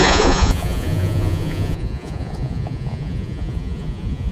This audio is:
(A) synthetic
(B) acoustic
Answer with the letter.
A